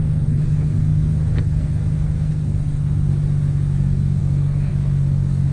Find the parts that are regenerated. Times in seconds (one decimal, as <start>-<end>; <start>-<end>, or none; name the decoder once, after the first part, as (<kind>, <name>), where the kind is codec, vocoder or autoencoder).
0.0-3.1 (codec, SNAC); 3.8-5.5